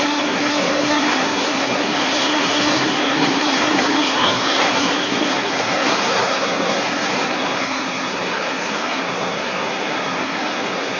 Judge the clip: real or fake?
fake